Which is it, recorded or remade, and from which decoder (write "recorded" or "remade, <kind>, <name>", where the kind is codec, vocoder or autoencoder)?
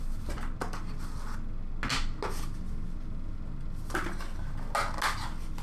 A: recorded